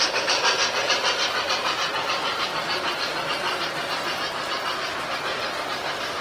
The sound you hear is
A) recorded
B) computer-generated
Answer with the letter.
A